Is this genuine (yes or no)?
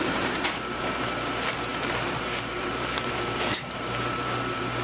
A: no